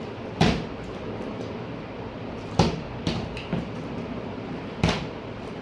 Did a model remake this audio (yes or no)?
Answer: yes